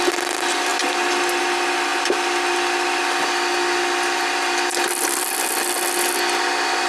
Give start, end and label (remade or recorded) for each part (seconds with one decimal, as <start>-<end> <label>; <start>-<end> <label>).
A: 0.0-6.9 recorded